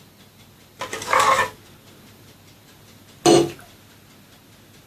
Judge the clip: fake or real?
real